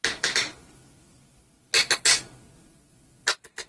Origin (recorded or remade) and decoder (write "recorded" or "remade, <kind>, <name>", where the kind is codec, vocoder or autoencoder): recorded